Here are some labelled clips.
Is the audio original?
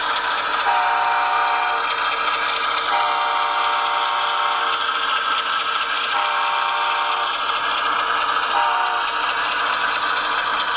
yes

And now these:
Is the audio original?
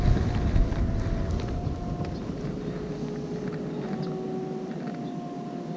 yes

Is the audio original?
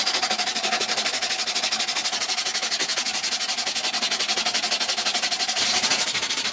yes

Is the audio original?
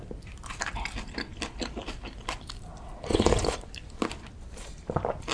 yes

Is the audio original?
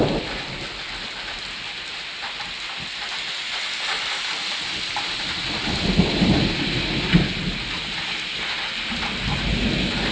yes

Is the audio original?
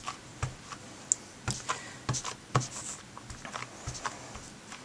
yes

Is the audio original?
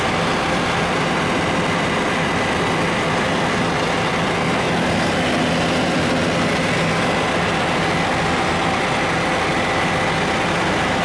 yes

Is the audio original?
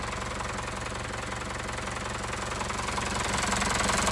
yes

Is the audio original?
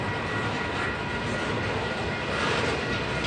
yes